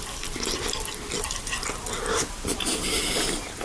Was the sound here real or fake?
real